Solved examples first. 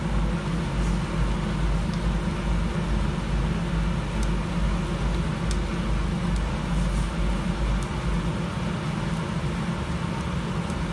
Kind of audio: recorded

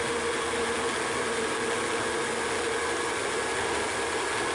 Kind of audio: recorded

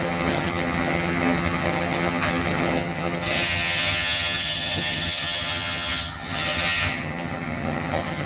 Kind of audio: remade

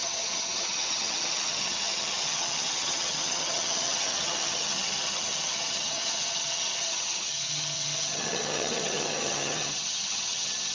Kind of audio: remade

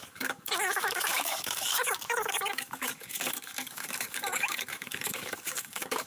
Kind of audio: remade